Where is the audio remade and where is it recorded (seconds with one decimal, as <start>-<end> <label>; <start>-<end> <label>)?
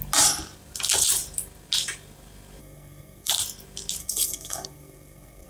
0.0-2.6 recorded; 2.6-3.3 remade; 3.3-4.0 recorded; 4.0-5.5 remade